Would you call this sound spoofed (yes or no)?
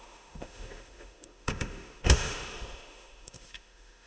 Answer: yes